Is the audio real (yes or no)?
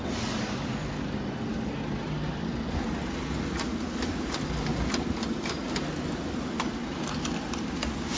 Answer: yes